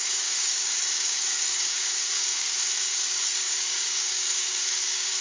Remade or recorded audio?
remade